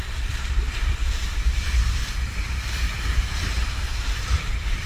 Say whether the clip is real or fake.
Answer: fake